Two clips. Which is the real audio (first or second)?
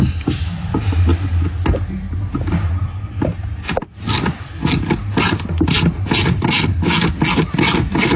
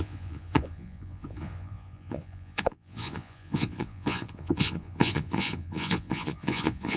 first